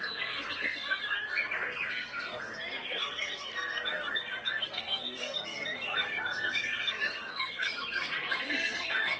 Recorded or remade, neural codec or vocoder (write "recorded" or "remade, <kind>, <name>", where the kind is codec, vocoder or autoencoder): remade, codec, SNAC